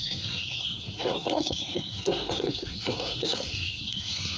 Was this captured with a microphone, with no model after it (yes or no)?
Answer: no